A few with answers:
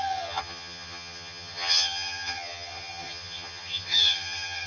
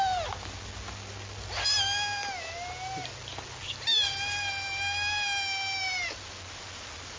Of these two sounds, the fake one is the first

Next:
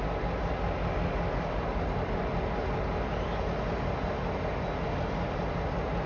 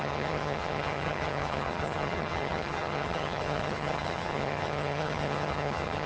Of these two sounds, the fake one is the second